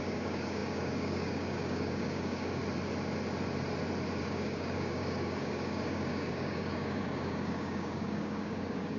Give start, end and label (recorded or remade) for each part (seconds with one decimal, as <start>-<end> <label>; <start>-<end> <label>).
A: 0.0-2.6 remade; 2.6-4.2 recorded; 4.2-9.0 remade